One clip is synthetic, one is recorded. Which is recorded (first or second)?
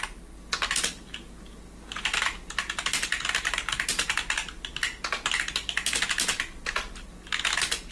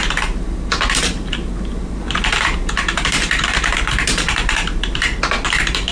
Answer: first